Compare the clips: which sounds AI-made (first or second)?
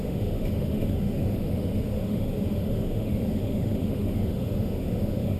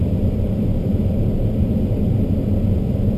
first